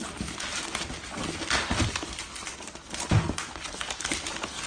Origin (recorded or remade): recorded